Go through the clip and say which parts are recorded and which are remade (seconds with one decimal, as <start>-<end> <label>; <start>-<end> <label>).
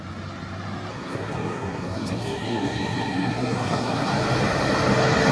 0.0-0.9 recorded; 0.9-4.1 remade; 4.1-5.3 recorded